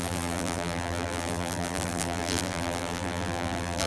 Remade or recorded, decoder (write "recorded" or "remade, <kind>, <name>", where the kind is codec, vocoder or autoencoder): remade, vocoder, BigVGAN v2